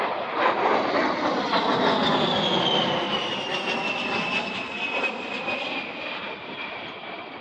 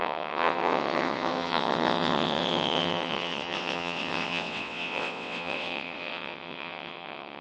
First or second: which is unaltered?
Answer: first